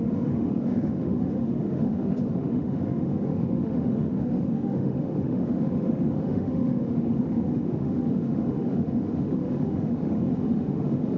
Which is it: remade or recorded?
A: remade